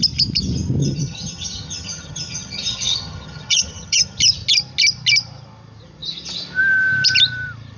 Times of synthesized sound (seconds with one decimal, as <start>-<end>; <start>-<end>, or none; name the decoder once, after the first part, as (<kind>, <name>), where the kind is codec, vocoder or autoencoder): 0.8-4.2 (vocoder, HiFi-GAN)